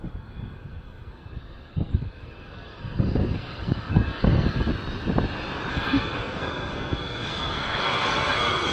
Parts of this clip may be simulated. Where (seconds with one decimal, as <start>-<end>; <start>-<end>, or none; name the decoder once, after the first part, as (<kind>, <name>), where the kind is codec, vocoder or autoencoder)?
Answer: 0.0-4.7 (codec, SNAC); 5.7-8.7